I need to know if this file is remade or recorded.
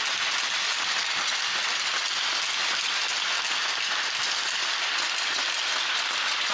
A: recorded